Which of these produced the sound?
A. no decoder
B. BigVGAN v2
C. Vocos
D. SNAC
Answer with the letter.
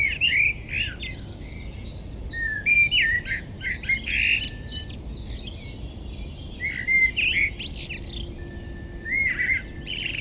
A